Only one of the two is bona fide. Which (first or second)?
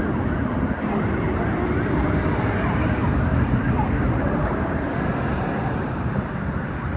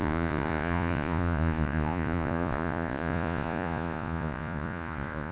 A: first